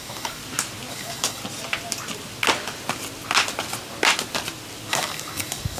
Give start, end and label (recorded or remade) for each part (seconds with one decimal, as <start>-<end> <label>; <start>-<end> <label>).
0.0-0.4 remade; 0.4-0.9 recorded; 0.9-1.4 remade; 1.4-4.9 recorded; 4.9-5.8 remade